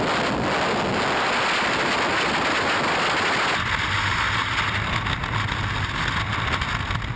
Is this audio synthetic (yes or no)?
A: no